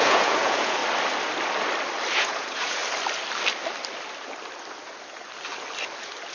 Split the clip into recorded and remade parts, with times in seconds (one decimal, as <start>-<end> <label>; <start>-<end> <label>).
0.0-0.8 remade; 0.8-2.1 recorded; 2.1-2.8 remade; 2.8-6.3 recorded